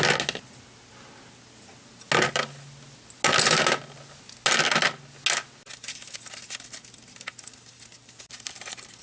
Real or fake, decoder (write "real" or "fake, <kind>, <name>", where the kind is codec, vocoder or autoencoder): real